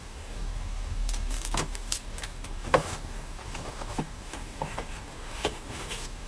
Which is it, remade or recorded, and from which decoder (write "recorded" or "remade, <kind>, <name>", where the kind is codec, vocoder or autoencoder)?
remade, codec, DAC